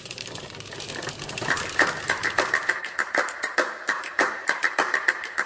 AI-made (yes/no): yes